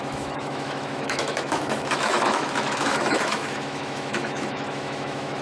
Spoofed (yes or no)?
yes